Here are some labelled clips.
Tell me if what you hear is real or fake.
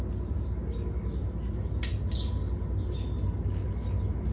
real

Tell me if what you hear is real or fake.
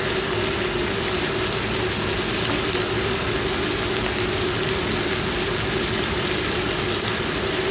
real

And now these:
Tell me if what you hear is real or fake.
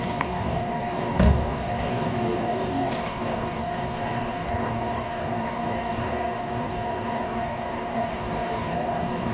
fake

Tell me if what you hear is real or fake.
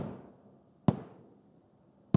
real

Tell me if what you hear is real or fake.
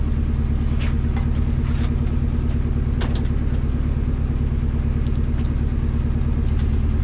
real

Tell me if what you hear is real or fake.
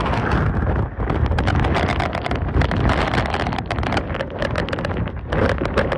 real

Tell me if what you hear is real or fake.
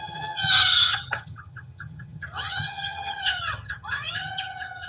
fake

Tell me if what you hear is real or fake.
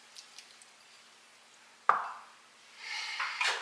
real